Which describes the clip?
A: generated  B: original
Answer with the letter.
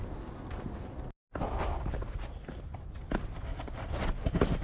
B